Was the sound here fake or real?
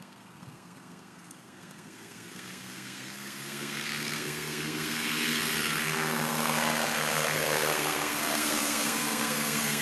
fake